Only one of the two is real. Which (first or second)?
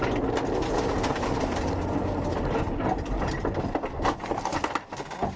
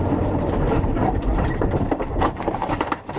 first